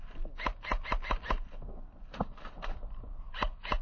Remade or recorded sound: recorded